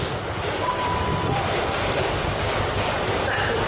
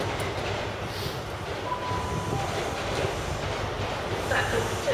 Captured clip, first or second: second